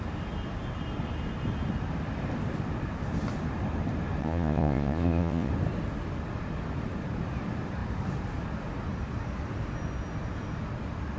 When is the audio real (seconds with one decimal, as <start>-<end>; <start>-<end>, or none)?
0.0-4.2; 5.5-11.2